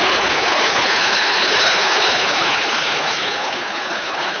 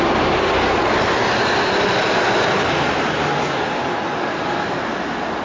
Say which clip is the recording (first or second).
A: second